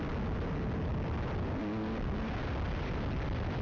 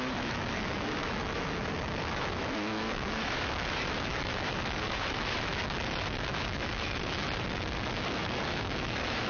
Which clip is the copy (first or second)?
second